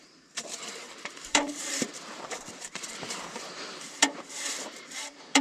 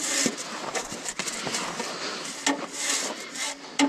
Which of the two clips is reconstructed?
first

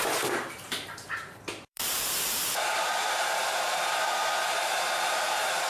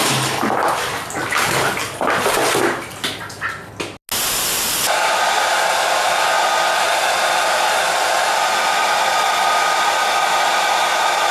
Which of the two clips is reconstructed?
first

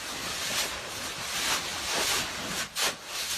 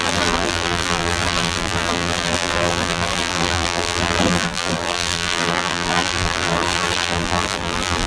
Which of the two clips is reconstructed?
second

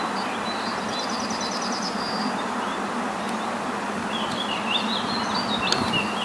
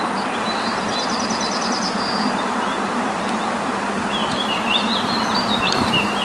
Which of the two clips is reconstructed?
second